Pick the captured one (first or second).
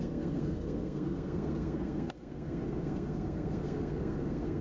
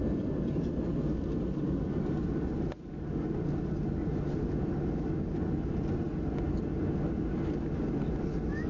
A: second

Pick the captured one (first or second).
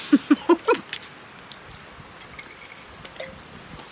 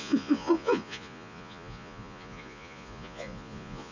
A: first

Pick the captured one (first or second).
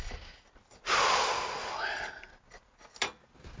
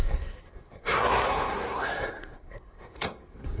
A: first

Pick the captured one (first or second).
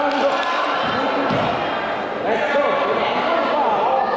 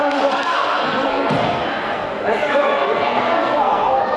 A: first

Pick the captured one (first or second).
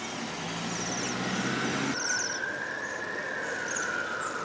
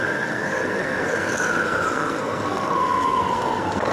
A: first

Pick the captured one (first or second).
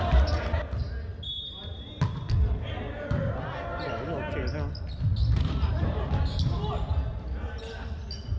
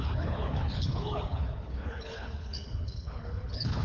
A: first